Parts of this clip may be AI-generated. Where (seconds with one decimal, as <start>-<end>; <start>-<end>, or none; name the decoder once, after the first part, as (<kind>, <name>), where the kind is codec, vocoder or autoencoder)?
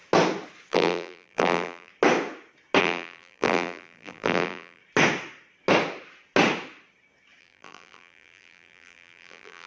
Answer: 0.7-1.9 (vocoder, BigVGAN v2); 2.8-4.8; 7.4-9.7